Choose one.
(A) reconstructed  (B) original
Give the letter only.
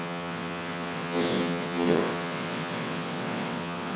A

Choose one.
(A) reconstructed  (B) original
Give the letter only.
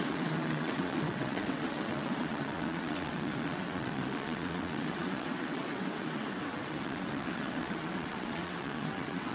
A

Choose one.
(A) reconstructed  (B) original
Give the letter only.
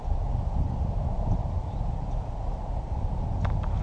B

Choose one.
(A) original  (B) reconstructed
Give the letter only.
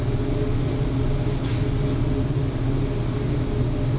A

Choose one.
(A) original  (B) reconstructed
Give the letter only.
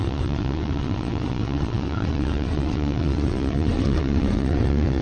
B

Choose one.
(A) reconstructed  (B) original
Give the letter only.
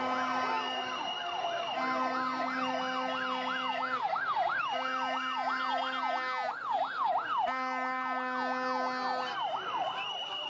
B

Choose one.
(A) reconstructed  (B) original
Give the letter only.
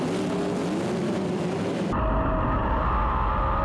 B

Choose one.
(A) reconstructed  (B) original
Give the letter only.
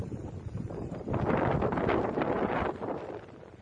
B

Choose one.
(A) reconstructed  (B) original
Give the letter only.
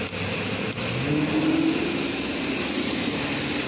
B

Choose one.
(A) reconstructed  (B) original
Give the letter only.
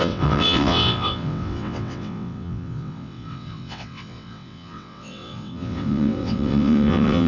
A